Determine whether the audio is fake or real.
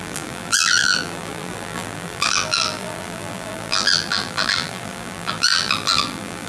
fake